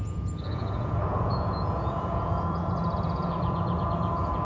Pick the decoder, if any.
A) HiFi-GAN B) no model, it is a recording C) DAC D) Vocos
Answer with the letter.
D